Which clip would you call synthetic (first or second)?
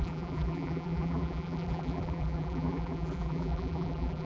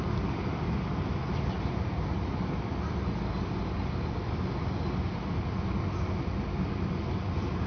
first